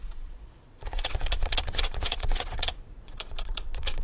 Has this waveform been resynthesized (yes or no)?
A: yes